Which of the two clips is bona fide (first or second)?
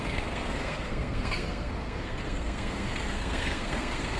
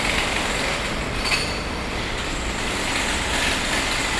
second